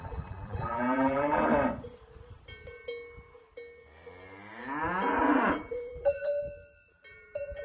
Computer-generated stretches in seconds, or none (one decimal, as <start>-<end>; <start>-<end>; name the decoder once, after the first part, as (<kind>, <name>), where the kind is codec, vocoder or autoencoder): 0.0-1.5 (vocoder, BigVGAN v2); 5.5-6.4; 6.9-7.6